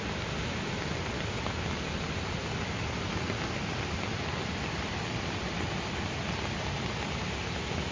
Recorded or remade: recorded